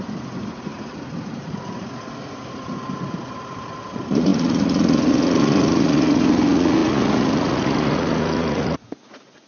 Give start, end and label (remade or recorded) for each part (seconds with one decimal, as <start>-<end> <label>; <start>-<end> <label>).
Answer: 0.0-9.5 remade